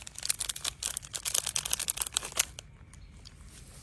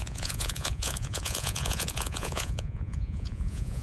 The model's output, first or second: second